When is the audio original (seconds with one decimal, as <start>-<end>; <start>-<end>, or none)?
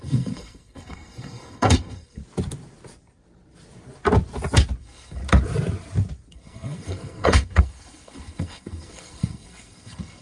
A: 2.2-4.8; 5.2-6.3